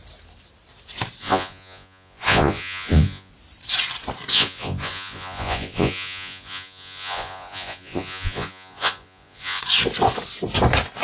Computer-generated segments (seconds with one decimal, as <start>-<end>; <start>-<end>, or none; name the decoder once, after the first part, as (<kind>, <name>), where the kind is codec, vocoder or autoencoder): 1.2-3.3 (vocoder, Vocos); 4.3-9.6